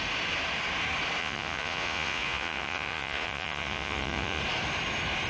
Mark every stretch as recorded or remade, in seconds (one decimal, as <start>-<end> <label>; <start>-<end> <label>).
0.0-1.2 recorded; 1.2-4.4 remade; 4.4-5.3 recorded

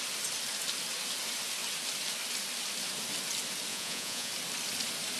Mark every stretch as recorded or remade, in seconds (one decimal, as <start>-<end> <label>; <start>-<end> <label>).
0.0-3.7 recorded; 3.7-4.3 remade; 4.3-5.2 recorded

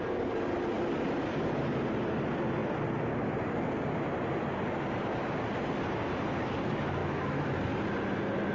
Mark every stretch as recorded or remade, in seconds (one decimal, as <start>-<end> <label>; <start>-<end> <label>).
0.0-7.0 recorded; 7.0-7.6 remade; 7.6-8.5 recorded

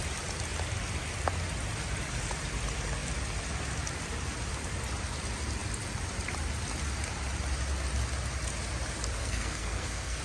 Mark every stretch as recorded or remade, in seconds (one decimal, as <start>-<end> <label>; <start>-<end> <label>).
0.0-9.2 recorded; 9.2-10.2 remade

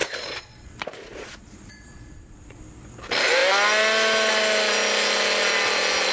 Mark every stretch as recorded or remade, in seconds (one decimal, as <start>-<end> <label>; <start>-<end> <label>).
0.0-2.6 remade; 2.6-6.1 recorded